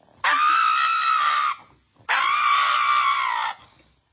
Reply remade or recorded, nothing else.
recorded